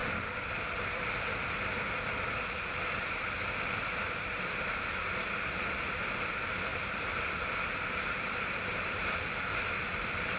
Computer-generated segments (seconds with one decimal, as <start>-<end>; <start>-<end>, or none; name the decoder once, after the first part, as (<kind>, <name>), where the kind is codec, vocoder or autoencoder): 0.0-1.2 (vocoder, BigVGAN v2); 6.7-7.3